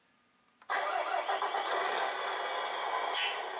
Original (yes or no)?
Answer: yes